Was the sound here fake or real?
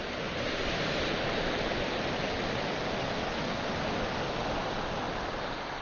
real